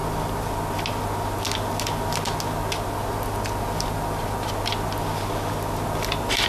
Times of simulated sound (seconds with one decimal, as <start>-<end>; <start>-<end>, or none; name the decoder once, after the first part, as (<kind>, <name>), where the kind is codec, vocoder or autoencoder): none